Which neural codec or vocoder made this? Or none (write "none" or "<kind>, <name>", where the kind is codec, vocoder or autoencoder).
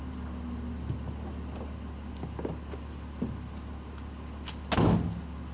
none